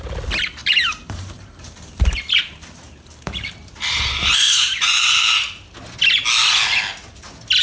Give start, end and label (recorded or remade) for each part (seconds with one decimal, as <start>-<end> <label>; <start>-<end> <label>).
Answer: 0.0-0.6 recorded; 0.6-5.2 remade; 5.2-7.6 recorded